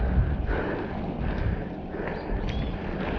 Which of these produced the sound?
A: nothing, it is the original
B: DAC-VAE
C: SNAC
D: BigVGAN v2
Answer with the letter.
A